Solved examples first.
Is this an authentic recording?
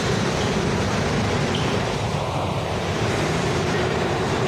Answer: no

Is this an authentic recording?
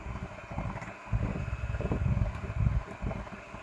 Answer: yes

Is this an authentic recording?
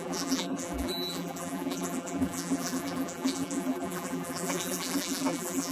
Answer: no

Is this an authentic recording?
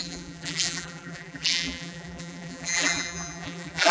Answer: no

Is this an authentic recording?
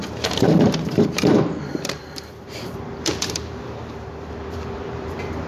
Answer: no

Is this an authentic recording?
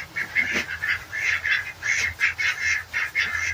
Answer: yes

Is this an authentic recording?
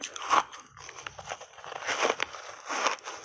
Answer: yes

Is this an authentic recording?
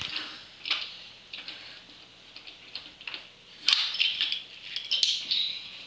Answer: yes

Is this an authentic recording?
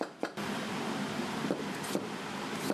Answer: no